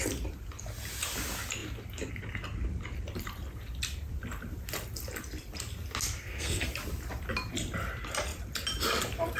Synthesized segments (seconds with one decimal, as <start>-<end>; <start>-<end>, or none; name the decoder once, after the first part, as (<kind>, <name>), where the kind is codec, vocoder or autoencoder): 6.2-6.7 (codec, SNAC)